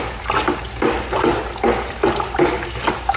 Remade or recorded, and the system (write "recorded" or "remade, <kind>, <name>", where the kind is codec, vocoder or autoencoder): recorded